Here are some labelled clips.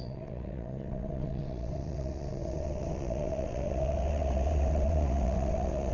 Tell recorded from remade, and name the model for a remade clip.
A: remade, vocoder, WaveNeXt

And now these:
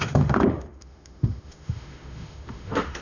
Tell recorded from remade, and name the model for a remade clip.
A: remade, autoencoder, DAC-VAE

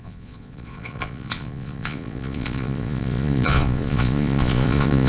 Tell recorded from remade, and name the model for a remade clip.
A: remade, vocoder, Vocos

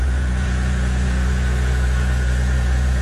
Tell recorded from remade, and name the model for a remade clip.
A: remade, vocoder, Vocos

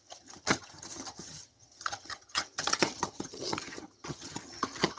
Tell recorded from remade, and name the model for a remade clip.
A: remade, vocoder, HiFi-GAN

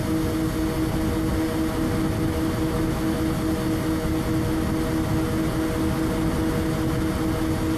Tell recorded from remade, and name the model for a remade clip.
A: recorded